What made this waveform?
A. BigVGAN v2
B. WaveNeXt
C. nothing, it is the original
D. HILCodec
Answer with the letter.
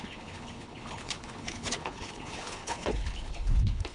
D